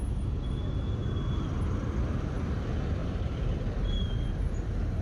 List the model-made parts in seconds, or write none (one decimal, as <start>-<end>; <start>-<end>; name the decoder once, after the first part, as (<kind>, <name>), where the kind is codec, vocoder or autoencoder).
3.0-5.0 (vocoder, BigVGAN v2)